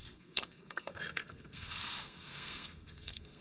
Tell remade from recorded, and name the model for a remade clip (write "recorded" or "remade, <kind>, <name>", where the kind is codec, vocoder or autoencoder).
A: remade, codec, SNAC